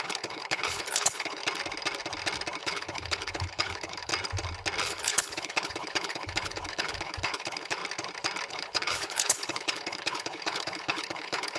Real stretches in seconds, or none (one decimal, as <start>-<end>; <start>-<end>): 1.4-2.6; 4.1-4.9; 7.8-8.5